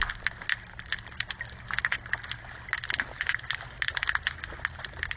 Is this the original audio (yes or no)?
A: yes